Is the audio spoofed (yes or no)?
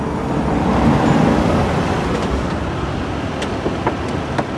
no